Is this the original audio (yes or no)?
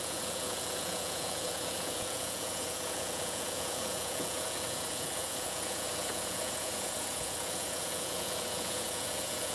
no